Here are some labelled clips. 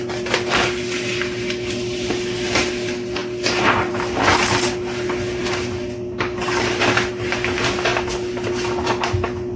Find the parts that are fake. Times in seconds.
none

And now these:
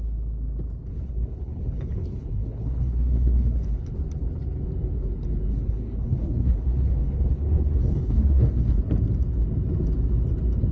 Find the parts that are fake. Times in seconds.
0.9-3.9 (codec, HILCodec); 5.5-8.8

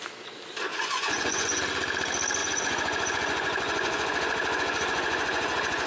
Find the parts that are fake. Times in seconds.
0.7-1.6 (vocoder, Vocos); 2.4-5.9

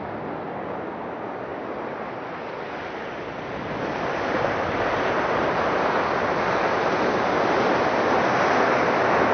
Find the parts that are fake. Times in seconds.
none

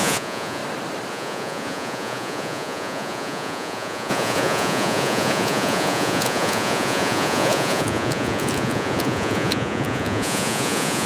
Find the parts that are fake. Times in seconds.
0.0-0.6 (vocoder, Vocos); 1.1-11.1

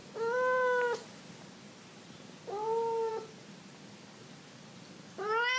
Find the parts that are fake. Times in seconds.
none

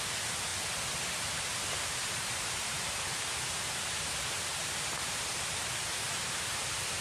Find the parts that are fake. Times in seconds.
2.0-5.8 (vocoder, BigVGAN v2)

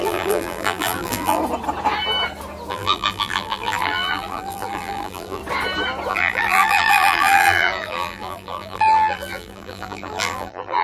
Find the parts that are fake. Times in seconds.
0.0-1.4 (vocoder, BigVGAN v2); 2.7-5.4; 6.1-10.8